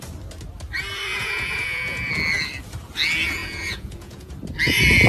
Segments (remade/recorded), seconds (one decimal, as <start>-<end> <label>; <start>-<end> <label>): 0.0-1.1 recorded; 1.1-2.1 remade; 2.1-3.4 recorded; 3.4-4.3 remade; 4.3-5.1 recorded